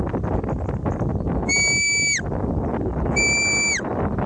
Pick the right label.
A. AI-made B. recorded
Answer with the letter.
B